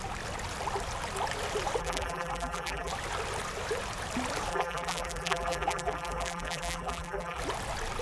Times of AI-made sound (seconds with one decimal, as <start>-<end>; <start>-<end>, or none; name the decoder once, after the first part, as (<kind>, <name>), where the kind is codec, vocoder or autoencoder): 1.8-2.9 (vocoder, BigVGAN v2); 4.5-7.4